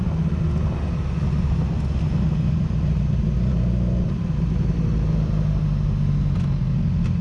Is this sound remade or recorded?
recorded